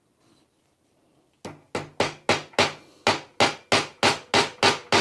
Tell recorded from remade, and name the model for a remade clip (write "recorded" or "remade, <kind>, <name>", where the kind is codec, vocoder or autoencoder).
recorded